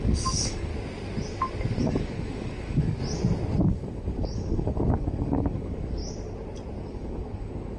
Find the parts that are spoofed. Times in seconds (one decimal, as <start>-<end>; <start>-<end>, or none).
0.0-0.7; 1.8-3.0; 3.6-6.0; 6.8-7.8